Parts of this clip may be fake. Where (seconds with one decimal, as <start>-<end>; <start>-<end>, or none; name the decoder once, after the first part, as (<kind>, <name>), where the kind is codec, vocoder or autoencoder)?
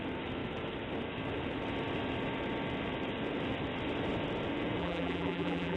4.8-5.8 (vocoder, BigVGAN v2)